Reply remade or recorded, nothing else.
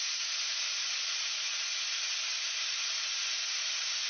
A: recorded